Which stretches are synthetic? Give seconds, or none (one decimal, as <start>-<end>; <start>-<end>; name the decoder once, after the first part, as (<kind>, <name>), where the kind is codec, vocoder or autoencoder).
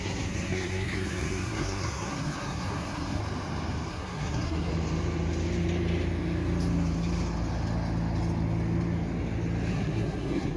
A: 0.0-3.2 (codec, SNAC); 3.9-4.7; 9.7-10.6